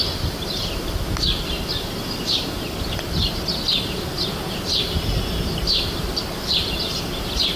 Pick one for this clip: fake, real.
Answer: real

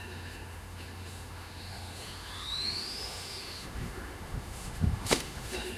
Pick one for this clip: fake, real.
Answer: fake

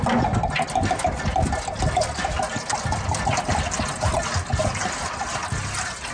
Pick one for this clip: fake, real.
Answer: real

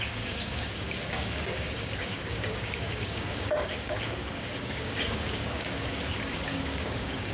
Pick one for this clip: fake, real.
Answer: fake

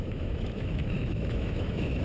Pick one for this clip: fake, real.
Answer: fake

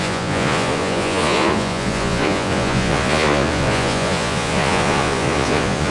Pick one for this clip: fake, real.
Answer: fake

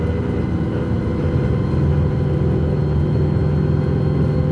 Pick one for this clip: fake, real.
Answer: real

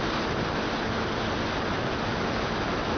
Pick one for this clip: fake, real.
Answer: real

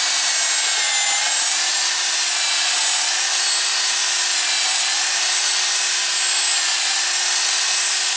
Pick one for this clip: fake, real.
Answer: real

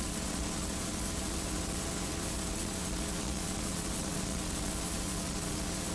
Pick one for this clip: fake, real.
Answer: fake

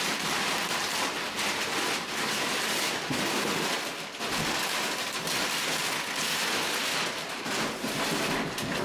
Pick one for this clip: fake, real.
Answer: fake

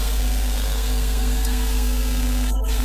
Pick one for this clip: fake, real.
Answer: fake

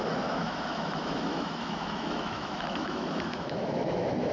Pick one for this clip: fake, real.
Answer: fake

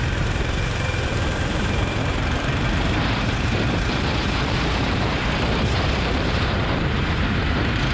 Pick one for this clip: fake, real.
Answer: fake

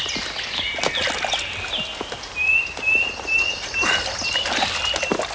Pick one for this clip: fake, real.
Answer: real